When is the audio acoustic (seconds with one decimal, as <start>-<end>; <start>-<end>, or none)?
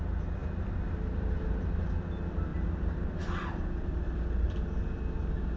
0.0-0.4; 1.6-2.5; 5.0-5.6